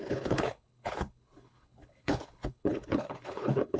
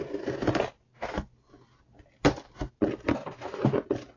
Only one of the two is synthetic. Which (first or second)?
first